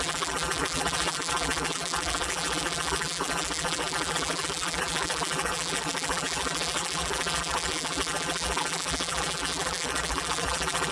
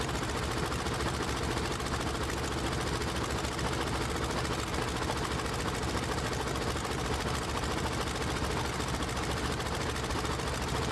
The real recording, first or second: second